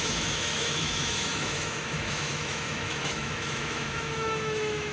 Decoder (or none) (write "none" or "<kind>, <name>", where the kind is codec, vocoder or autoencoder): autoencoder, DAC-VAE